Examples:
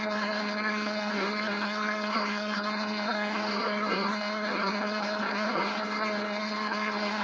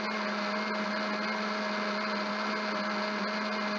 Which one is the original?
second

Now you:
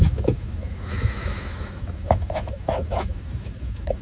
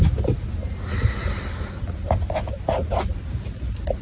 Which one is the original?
second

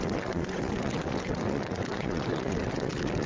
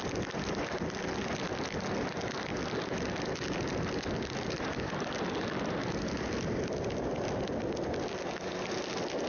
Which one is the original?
second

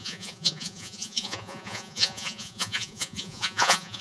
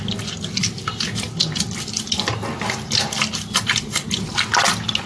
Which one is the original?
second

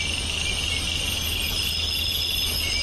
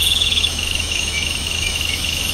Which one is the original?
first